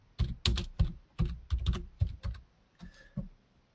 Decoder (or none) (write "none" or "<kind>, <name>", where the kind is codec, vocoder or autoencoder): none